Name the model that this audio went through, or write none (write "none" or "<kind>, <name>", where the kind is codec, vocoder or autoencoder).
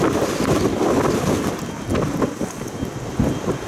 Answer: none